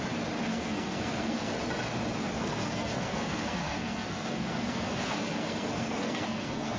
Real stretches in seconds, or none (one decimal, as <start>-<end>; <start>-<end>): 0.0-0.5; 1.6-2.4